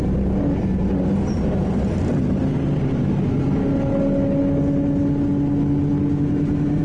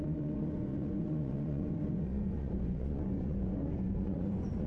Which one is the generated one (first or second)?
second